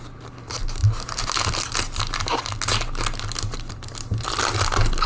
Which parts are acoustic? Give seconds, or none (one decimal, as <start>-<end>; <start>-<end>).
0.0-5.1